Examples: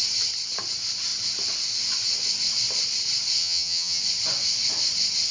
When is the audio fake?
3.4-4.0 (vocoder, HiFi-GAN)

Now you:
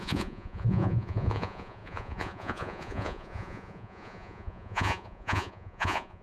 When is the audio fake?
0.0-6.2 (vocoder, Vocos)

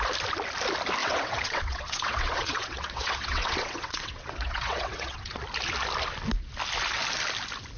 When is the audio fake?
1.0-5.4 (vocoder, WaveNeXt)

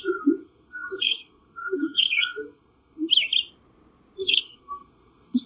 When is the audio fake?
0.4-3.1 (codec, SNAC); 4.2-5.5

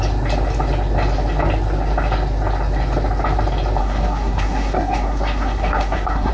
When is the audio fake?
3.8-6.3 (codec, SNAC)

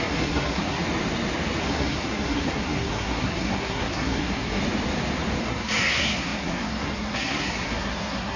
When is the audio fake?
0.0-0.8 (codec, SNAC); 1.6-4.6; 5.4-8.4

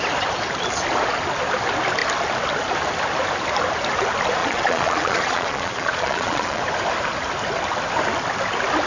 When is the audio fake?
4.4-6.6 (vocoder, Vocos)

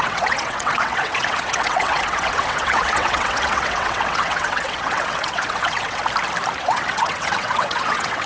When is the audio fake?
0.0-6.0 (vocoder, WaveNeXt); 6.6-8.3